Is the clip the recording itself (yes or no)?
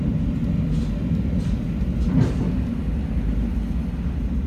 yes